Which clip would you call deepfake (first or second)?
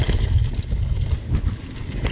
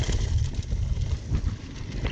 second